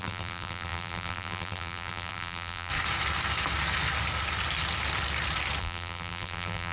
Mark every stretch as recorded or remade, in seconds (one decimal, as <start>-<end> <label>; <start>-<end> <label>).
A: 0.0-2.7 remade; 2.7-5.6 recorded; 5.6-6.7 remade

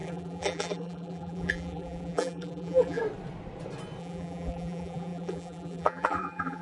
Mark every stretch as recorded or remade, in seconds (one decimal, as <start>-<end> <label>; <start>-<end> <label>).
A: 0.0-3.0 remade; 3.0-4.0 recorded; 4.0-6.6 remade

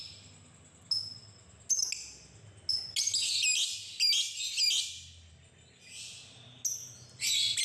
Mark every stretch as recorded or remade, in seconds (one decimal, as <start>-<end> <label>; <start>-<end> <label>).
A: 0.0-7.6 recorded

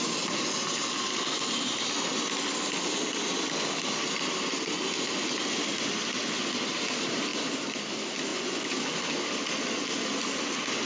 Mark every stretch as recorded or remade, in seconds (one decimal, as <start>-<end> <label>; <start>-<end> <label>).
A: 0.0-8.3 recorded; 8.3-9.0 remade; 9.0-10.9 recorded

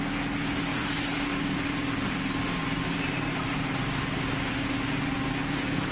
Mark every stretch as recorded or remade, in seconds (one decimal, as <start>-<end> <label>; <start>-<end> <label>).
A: 0.0-0.7 recorded; 0.7-4.2 remade; 4.2-5.9 recorded

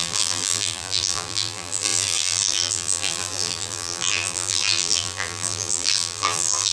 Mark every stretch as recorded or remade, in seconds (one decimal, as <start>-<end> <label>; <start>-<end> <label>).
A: 0.0-6.7 remade

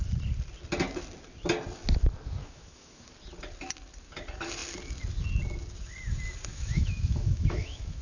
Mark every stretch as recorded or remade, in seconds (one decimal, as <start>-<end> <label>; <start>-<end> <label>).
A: 0.0-2.4 recorded; 2.4-3.0 remade; 3.0-6.5 recorded; 6.5-8.0 remade